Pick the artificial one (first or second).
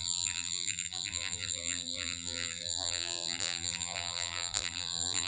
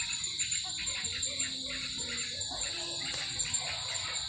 first